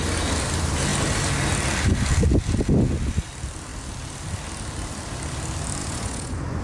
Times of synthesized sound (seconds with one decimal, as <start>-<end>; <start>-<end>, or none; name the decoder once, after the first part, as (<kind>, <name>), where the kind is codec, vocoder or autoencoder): 5.8-6.6 (vocoder, Vocos)